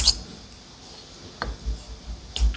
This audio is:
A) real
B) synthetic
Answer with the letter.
A